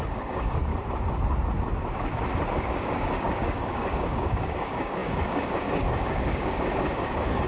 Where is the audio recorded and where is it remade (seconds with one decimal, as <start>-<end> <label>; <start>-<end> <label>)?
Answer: 0.0-0.7 remade; 0.7-2.5 recorded; 2.5-7.5 remade